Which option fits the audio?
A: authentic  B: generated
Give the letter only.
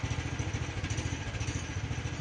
A